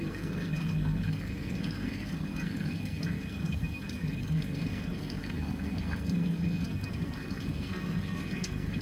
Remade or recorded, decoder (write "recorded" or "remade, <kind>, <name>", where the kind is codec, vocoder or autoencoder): remade, codec, SNAC